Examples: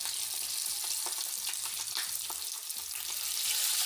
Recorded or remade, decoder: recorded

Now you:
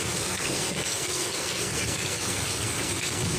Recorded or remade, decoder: remade, codec, SNAC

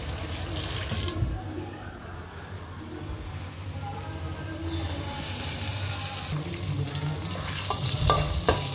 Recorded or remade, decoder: recorded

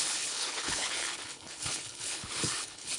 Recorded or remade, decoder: remade, codec, HILCodec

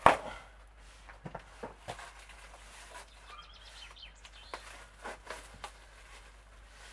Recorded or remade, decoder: recorded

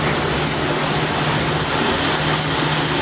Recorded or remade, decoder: recorded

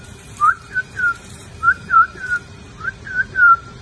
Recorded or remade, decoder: remade, vocoder, BigVGAN v2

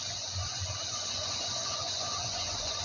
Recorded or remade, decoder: remade, vocoder, Vocos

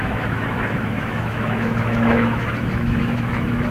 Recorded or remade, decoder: remade, autoencoder, DAC-VAE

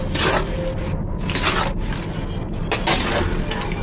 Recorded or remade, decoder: recorded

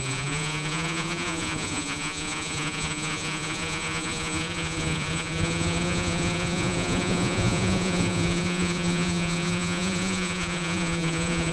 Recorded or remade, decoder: remade, vocoder, Vocos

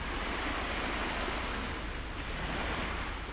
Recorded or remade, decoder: recorded